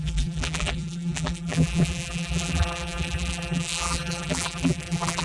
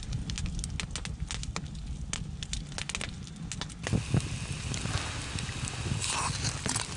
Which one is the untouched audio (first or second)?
second